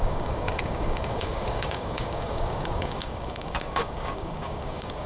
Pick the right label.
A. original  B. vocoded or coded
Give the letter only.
B